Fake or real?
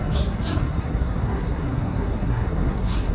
fake